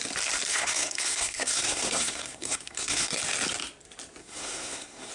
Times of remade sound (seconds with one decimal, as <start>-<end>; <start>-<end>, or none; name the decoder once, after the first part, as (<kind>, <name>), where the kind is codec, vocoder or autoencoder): 0.5-3.2 (codec, SNAC); 4.2-5.1